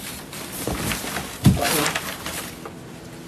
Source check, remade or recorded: recorded